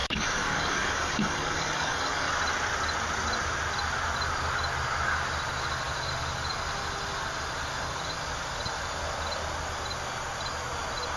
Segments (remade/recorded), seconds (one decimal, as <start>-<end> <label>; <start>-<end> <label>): 0.0-2.3 remade; 2.3-11.2 recorded